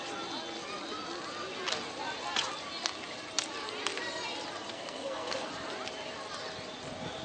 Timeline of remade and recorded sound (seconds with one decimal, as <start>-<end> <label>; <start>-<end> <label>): 0.0-4.7 recorded; 4.7-5.5 remade; 5.5-7.2 recorded